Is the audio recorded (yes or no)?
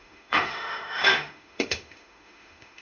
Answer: no